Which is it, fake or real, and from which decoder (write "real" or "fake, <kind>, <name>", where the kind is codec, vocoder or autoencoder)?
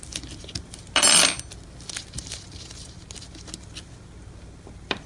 real